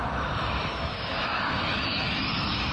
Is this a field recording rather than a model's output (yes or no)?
no